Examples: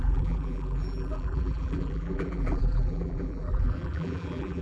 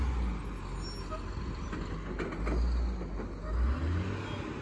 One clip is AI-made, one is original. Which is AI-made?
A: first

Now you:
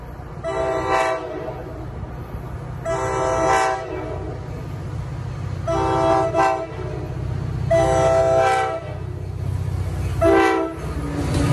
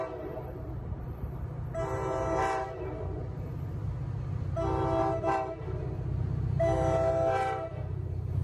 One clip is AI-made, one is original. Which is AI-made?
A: second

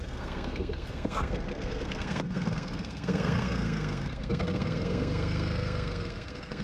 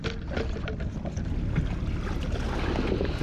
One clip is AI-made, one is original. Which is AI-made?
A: first